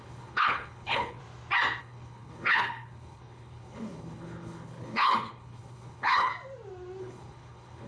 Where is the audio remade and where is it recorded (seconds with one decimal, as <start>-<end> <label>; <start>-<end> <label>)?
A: 0.0-1.2 remade; 1.2-1.8 recorded; 1.8-6.3 remade; 6.3-7.0 recorded; 7.0-7.9 remade